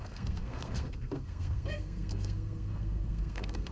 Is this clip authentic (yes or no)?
no